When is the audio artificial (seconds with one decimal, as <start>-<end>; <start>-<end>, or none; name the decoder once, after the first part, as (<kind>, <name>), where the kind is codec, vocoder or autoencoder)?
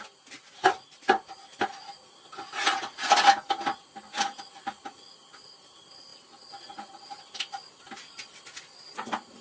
none